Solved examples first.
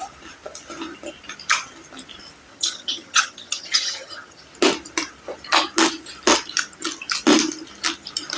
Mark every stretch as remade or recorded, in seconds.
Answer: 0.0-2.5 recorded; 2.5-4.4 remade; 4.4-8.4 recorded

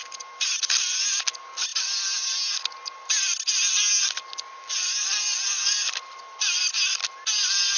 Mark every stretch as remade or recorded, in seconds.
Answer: 0.0-7.8 recorded

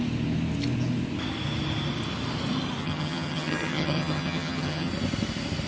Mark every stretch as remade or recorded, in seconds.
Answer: 0.0-2.8 recorded; 2.8-4.9 remade; 4.9-5.7 recorded

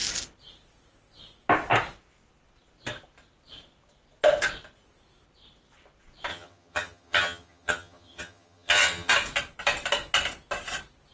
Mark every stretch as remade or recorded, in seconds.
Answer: 0.0-6.3 recorded; 6.3-9.1 remade; 9.1-11.1 recorded

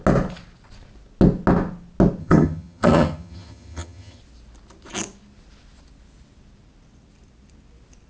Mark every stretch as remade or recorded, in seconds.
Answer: 0.0-2.2 recorded; 2.2-4.2 remade; 4.2-8.1 recorded

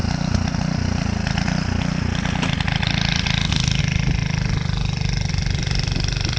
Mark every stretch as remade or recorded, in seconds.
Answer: 0.0-6.4 recorded

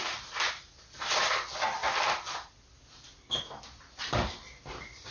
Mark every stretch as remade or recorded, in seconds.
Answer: 0.0-5.1 recorded

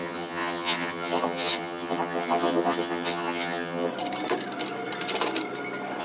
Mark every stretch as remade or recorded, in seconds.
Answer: 0.0-3.9 remade; 3.9-6.0 recorded